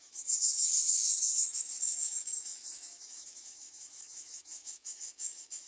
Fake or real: fake